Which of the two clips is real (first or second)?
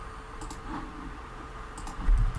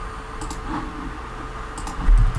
second